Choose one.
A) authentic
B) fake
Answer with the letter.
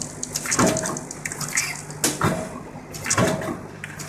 A